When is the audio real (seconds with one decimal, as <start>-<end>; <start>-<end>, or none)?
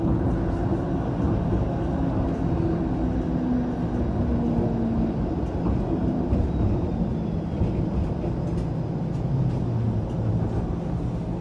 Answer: 0.0-6.0; 7.6-11.4